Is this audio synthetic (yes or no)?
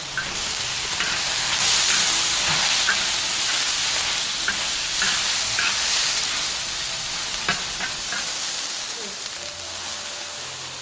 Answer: no